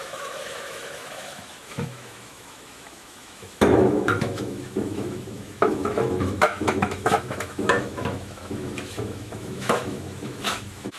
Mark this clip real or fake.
fake